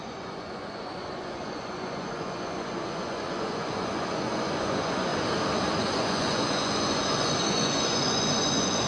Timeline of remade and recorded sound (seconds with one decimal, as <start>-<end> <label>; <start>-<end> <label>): 0.0-5.1 remade; 5.1-5.8 recorded; 5.8-8.9 remade